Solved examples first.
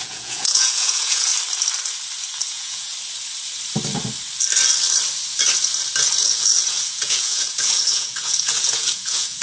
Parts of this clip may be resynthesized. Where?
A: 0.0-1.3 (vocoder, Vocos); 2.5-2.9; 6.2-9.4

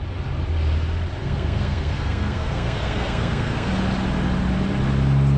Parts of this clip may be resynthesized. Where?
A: 1.2-3.7 (codec, SNAC)

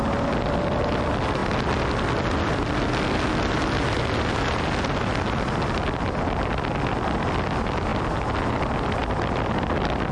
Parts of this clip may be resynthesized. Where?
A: none

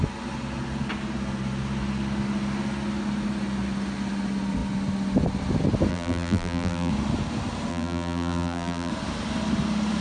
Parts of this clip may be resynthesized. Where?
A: 5.9-6.9 (vocoder, BigVGAN v2); 7.7-8.9

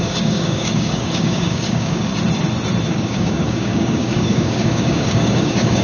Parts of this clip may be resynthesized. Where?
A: 0.0-2.1 (codec, DAC); 2.9-5.8

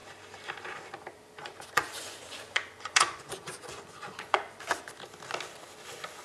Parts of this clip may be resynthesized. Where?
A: 1.4-4.9 (vocoder, Vocos)